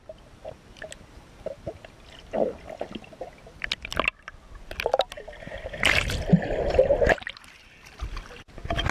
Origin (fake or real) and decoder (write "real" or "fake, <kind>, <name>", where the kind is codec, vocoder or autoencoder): real